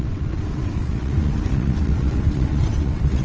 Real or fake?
fake